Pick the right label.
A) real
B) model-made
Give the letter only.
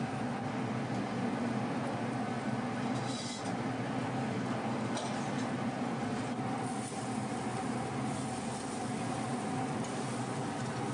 A